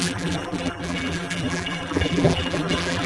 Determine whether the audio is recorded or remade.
remade